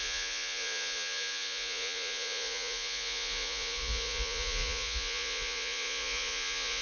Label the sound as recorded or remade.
remade